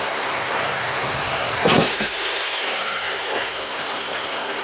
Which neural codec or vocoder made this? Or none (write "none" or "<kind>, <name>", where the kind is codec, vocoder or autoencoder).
codec, SNAC